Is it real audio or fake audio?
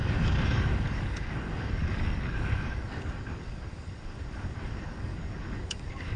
fake